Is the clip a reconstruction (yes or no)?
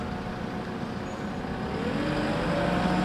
no